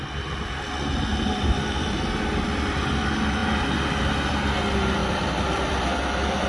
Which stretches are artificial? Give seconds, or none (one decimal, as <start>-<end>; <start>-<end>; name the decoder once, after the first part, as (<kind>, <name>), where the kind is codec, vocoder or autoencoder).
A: 1.1-2.0 (vocoder, BigVGAN v2); 5.0-6.5